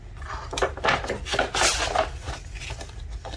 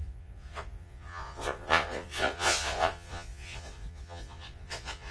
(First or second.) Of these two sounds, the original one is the first